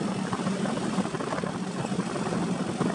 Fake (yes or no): no